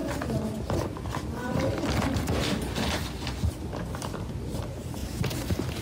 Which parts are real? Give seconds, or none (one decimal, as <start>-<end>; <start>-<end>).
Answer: 0.0-3.5